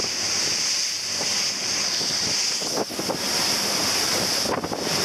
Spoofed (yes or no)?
no